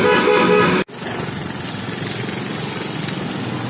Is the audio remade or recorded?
recorded